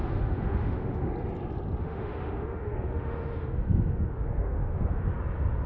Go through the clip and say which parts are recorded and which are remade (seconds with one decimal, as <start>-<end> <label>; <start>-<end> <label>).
0.0-1.1 remade; 1.1-1.8 recorded; 1.8-5.2 remade; 5.2-5.7 recorded